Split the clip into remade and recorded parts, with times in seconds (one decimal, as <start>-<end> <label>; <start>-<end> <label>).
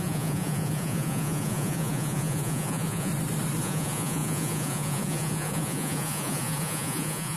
0.0-3.1 remade; 3.1-3.6 recorded; 3.6-7.4 remade